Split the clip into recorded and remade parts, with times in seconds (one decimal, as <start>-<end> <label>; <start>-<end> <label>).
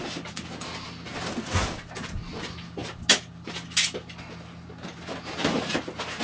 0.0-6.2 recorded